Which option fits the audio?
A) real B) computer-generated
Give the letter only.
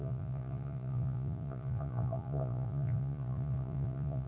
B